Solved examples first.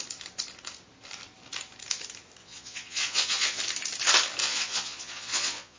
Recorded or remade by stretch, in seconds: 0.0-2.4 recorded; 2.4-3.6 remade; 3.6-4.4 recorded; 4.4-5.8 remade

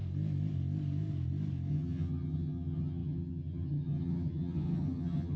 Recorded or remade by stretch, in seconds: 0.0-1.7 recorded; 1.7-5.4 remade

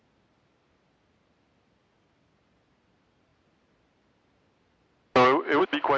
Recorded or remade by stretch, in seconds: 0.0-6.0 recorded

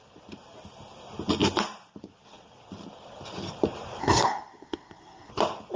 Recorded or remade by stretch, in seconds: 0.0-4.0 recorded; 4.0-5.3 remade; 5.3-5.8 recorded

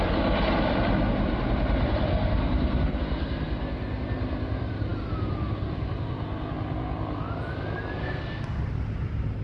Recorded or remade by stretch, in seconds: 0.0-2.1 recorded; 2.1-3.0 remade; 3.0-8.0 recorded; 8.0-8.6 remade; 8.6-9.4 recorded